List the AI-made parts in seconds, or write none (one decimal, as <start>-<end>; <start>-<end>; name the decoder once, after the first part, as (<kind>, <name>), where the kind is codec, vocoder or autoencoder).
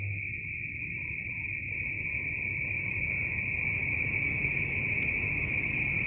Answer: none